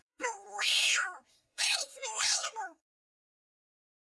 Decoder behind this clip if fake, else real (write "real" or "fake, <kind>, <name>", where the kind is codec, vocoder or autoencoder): fake, codec, SNAC